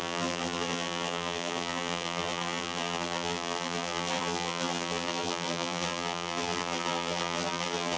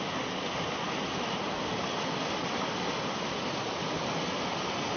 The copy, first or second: first